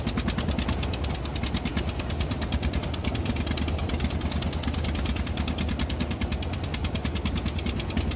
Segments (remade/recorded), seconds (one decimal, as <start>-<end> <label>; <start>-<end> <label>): 0.0-8.2 recorded